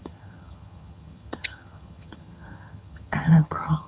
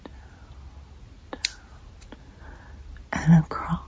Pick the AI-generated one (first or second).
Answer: first